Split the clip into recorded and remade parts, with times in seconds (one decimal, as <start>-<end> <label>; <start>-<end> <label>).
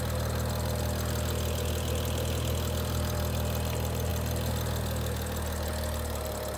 0.0-6.6 recorded